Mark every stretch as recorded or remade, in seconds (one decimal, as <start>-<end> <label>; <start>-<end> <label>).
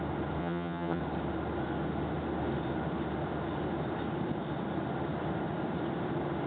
0.0-0.4 recorded; 0.4-1.0 remade; 1.0-6.5 recorded